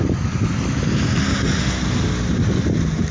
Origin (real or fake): real